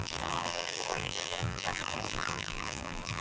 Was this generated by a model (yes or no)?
yes